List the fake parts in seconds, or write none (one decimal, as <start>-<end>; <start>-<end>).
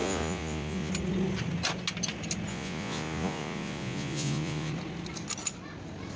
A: 0.0-0.9; 2.5-4.7